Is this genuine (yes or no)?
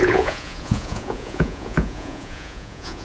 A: no